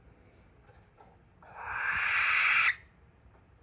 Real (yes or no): yes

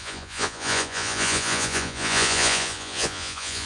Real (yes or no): no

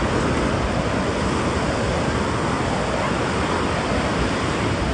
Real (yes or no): yes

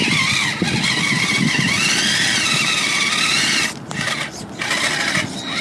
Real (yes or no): yes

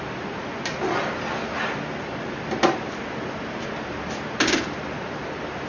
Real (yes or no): yes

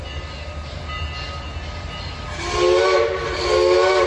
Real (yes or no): yes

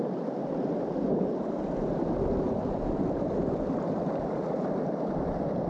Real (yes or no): yes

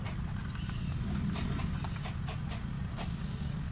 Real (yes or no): yes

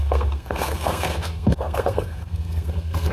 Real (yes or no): no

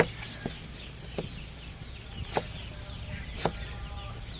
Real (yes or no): yes